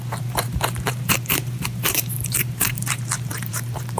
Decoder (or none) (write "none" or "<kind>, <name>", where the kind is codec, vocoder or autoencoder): vocoder, BigVGAN v2